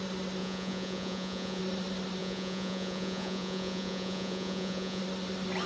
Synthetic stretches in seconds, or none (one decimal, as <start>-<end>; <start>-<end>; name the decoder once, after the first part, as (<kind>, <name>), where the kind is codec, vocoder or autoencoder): 0.4-1.6 (vocoder, Vocos); 2.2-5.0